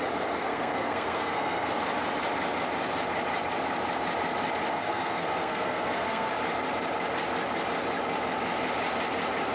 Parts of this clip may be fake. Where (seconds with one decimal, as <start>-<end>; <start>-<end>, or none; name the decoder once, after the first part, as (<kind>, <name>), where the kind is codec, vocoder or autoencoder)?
0.4-1.8 (codec, SNAC); 4.7-6.3